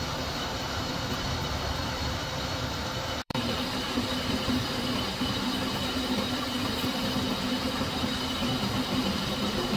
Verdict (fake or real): fake